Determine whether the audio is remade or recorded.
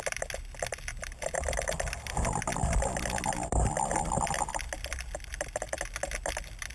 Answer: recorded